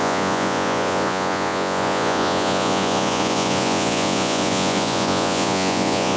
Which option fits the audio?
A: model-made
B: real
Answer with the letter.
A